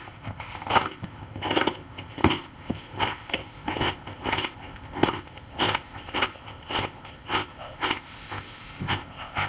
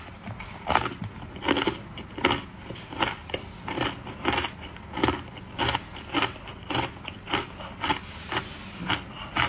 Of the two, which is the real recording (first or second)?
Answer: second